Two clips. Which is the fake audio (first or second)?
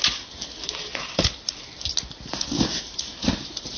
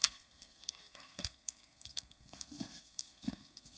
second